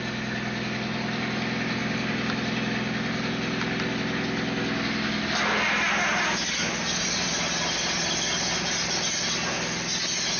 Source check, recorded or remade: recorded